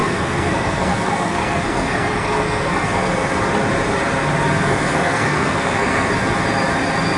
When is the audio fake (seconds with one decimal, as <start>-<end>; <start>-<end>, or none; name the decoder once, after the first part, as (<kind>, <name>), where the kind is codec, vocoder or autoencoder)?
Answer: 0.0-3.3 (codec, SNAC); 4.7-6.1